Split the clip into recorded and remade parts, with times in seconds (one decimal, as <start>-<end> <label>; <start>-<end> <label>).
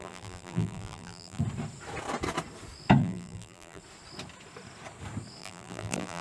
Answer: 0.0-1.4 remade; 1.4-3.0 recorded; 3.0-3.8 remade; 3.8-5.4 recorded; 5.4-6.2 remade